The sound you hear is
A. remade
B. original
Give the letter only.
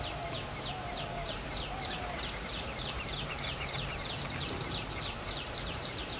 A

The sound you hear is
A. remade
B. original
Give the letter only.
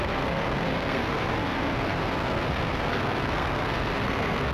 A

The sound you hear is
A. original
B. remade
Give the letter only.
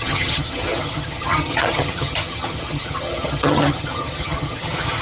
B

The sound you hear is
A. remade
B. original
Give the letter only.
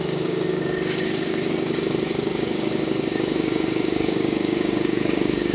A